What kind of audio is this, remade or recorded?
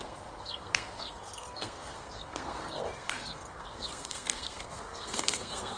remade